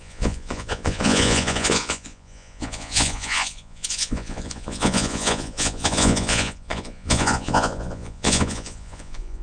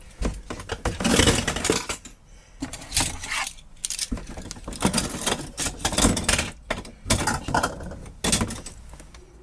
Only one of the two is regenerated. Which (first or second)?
first